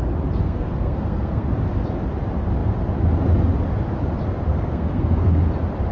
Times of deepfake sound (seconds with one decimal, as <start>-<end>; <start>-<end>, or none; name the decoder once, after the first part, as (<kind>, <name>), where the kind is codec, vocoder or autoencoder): 0.4-1.5 (codec, SNAC); 4.5-5.4